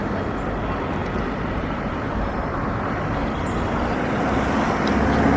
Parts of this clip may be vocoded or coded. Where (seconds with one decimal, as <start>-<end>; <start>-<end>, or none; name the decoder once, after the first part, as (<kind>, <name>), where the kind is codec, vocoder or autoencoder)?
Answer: 1.0-4.2 (vocoder, BigVGAN v2)